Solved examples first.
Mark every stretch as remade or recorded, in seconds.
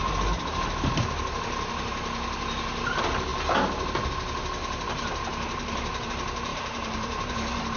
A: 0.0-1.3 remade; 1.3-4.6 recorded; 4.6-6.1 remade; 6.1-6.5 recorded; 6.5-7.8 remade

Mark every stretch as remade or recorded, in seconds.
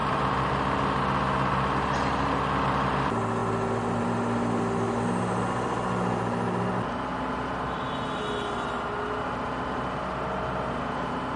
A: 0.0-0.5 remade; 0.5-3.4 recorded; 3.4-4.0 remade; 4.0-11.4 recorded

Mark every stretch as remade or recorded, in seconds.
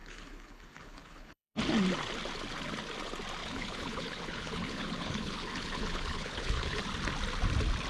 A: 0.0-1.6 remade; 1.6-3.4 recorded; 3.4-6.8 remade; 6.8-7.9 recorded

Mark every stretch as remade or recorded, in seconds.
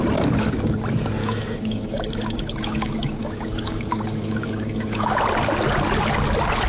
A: 0.0-1.2 recorded; 1.2-5.2 remade; 5.2-6.7 recorded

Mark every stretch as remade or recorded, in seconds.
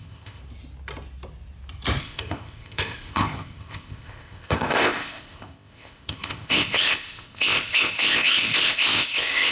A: 0.0-0.4 remade; 0.4-2.0 recorded; 2.0-9.5 remade